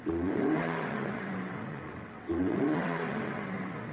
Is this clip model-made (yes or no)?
yes